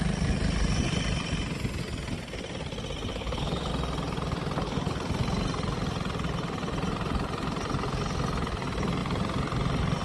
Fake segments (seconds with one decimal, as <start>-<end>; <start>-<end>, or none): 3.1-3.7; 4.6-5.1